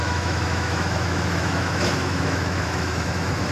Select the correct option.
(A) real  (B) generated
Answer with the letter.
B